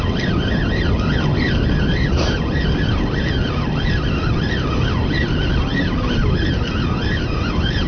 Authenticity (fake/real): real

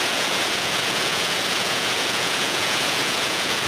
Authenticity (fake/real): fake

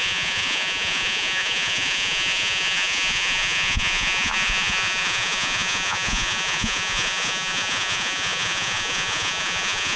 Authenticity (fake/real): fake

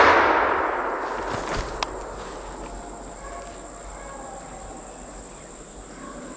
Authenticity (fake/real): real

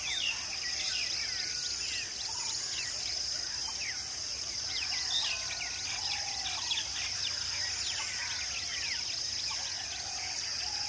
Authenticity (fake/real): real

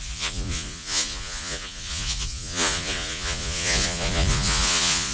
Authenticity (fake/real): fake